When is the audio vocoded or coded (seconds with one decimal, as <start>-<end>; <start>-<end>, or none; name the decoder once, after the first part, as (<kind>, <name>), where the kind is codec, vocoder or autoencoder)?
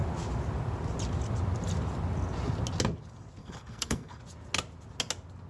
3.4-4.2 (codec, SNAC)